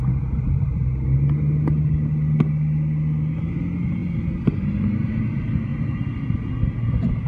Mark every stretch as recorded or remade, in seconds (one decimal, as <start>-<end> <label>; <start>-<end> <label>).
0.0-4.0 recorded; 4.0-5.1 remade; 5.1-7.3 recorded